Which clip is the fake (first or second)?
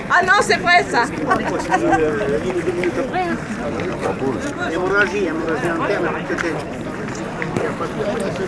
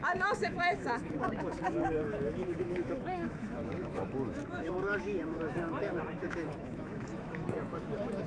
second